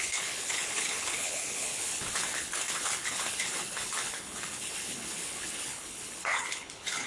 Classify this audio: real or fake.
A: fake